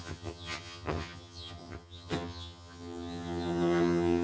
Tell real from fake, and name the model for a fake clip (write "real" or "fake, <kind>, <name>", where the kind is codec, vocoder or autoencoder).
fake, vocoder, HiFi-GAN